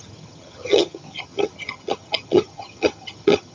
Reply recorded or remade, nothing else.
remade